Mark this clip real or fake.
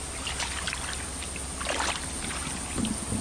real